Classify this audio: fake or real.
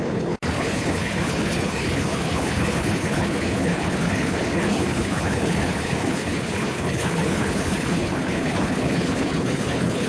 fake